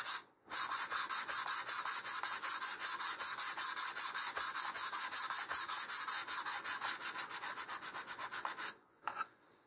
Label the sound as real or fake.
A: fake